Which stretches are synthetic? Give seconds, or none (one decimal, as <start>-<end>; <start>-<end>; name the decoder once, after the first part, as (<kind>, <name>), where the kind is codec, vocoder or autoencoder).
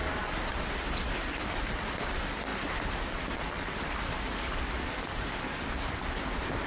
none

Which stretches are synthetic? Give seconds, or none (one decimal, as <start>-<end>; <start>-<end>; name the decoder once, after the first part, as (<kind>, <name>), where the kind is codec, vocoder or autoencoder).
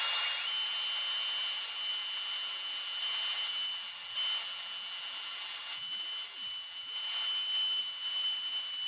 none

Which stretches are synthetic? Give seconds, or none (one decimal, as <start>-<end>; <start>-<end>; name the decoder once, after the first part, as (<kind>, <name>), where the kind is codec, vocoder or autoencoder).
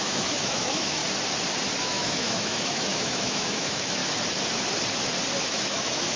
0.0-1.0 (autoencoder, DAC-VAE); 1.8-4.0; 5.4-6.2